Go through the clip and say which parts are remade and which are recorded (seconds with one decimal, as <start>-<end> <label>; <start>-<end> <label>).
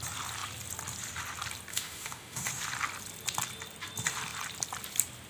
0.0-1.7 recorded; 1.7-2.5 remade; 2.5-5.3 recorded